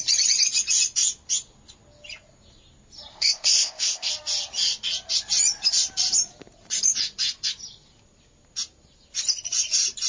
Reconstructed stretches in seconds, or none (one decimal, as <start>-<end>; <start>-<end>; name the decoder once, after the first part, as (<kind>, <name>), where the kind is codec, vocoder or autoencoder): 3.1-4.1 (codec, ZipCodec)